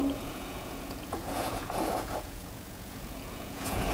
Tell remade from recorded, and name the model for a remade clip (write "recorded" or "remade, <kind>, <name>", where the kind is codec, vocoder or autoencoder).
remade, vocoder, Vocos